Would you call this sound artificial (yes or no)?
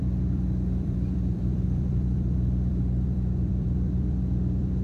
yes